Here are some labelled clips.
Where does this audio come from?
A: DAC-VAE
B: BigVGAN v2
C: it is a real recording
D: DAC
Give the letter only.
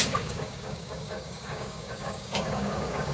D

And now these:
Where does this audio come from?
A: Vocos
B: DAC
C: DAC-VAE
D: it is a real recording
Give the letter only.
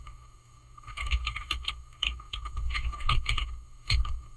B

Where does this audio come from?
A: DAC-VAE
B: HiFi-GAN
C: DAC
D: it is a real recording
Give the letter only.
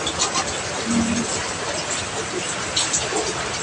D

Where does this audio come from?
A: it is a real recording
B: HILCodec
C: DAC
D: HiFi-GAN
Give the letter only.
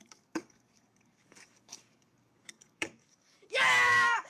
C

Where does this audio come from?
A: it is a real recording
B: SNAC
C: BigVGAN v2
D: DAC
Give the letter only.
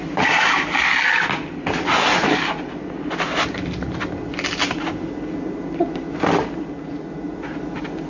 A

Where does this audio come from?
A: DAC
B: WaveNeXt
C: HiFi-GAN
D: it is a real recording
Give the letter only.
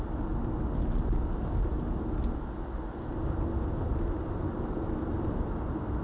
D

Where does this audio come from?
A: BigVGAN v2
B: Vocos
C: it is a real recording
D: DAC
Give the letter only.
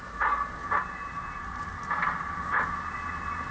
C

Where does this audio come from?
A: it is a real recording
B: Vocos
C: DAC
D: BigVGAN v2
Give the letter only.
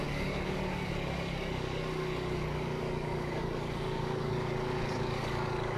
C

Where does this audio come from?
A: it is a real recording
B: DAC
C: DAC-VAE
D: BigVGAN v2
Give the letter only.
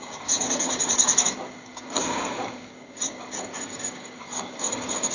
B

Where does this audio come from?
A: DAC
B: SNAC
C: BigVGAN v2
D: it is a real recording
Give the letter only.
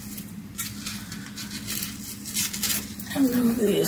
D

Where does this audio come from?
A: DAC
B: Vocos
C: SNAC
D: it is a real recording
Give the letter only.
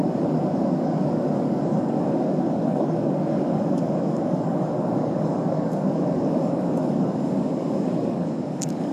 A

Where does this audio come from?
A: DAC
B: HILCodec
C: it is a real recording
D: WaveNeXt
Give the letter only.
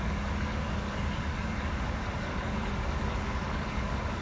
A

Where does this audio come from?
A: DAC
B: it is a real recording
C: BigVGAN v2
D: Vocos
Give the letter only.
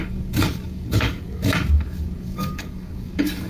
A